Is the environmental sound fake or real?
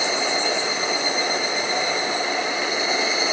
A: real